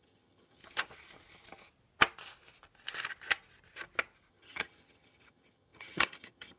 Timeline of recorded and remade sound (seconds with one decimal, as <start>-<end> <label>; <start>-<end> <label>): 0.0-0.6 remade; 0.6-4.3 recorded; 4.3-6.6 remade